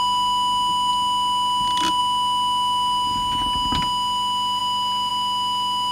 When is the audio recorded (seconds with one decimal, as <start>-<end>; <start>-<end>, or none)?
0.0-5.9